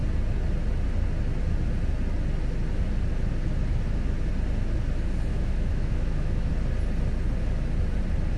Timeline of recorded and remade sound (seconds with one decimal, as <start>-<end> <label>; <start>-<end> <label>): 0.0-5.3 recorded; 5.3-6.5 remade; 6.5-8.4 recorded

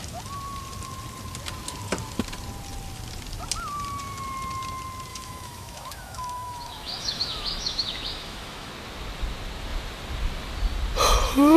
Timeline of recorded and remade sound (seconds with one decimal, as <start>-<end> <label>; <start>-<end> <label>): 0.0-5.1 recorded; 5.1-8.7 remade; 8.7-11.6 recorded

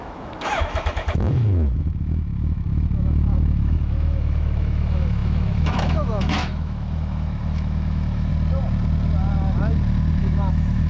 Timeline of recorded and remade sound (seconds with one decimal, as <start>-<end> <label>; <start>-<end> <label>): 0.0-8.3 remade; 8.3-10.2 recorded; 10.2-10.9 remade